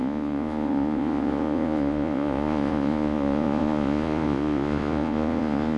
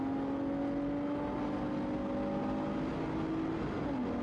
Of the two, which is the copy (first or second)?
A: first